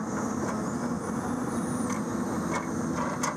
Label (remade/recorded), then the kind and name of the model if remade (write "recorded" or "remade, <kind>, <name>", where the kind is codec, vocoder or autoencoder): recorded